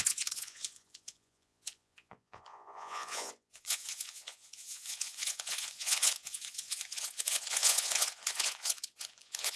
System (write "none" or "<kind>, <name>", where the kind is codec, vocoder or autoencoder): vocoder, Vocos